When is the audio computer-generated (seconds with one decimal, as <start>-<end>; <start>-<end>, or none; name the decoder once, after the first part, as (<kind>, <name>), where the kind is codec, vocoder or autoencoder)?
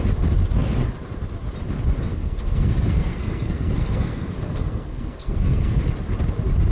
2.1-5.8 (codec, SNAC)